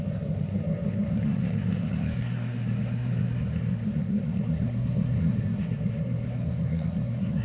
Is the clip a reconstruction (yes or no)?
yes